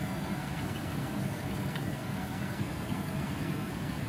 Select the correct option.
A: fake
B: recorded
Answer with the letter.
A